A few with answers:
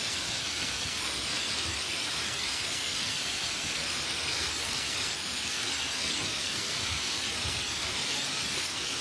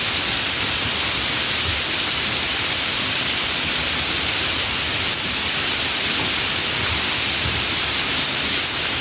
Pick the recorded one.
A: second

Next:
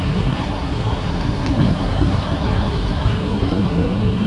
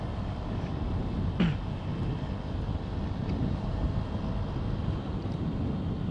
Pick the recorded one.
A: second